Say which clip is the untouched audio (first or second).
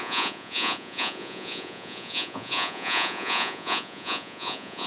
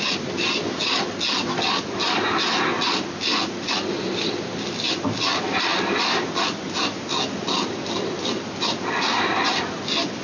second